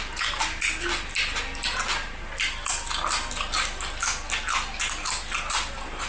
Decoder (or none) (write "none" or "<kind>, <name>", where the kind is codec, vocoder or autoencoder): none